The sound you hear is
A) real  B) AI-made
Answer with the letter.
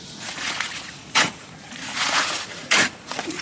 B